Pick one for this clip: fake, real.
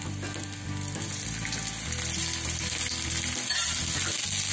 real